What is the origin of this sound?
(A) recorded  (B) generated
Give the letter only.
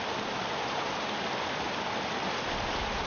A